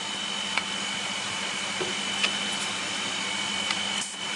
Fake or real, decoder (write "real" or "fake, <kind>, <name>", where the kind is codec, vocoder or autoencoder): real